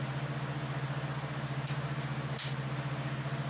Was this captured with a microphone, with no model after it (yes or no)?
yes